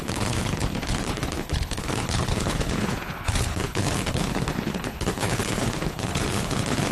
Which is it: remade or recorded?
remade